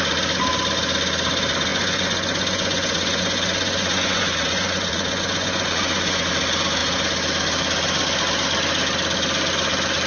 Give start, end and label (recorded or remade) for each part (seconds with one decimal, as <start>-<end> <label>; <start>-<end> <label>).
0.0-1.7 recorded; 1.7-6.3 remade; 6.3-10.1 recorded